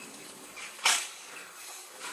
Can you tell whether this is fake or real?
fake